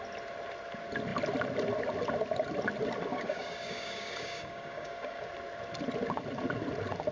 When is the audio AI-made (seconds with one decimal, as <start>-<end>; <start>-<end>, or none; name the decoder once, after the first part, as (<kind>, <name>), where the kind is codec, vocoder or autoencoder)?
3.1-5.3 (codec, DAC)